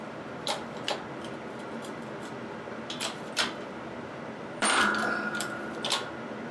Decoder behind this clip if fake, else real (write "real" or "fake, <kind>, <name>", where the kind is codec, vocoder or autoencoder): fake, vocoder, BigVGAN v2